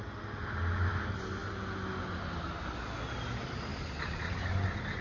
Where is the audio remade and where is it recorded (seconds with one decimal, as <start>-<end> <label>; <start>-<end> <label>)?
0.0-5.0 recorded